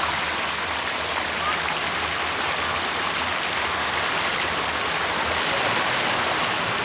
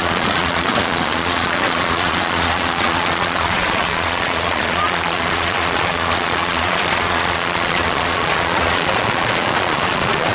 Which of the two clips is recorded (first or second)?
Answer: first